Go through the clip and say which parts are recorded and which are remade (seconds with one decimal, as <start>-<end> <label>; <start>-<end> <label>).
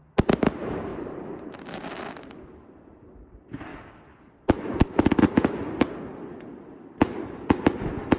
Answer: 0.0-8.2 recorded